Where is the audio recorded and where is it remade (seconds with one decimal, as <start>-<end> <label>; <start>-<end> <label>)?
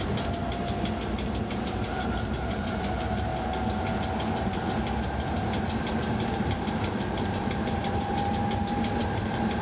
0.0-0.4 remade; 0.4-1.4 recorded; 1.4-3.3 remade; 3.3-6.3 recorded; 6.3-9.6 remade